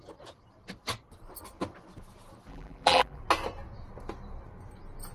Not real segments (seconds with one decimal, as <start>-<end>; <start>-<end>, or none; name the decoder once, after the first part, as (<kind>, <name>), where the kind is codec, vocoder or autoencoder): 2.5-3.2 (vocoder, BigVGAN v2)